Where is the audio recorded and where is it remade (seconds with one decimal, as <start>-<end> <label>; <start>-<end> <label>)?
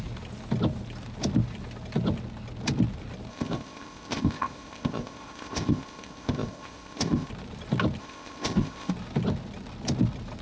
0.0-3.3 recorded; 3.3-7.3 remade; 7.3-8.0 recorded; 8.0-8.9 remade; 8.9-10.4 recorded